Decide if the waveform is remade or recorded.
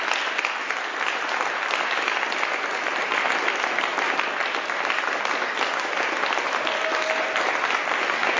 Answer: recorded